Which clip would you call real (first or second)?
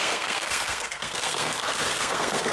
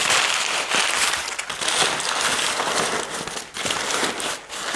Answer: second